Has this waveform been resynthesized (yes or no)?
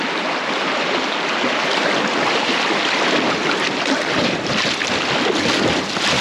no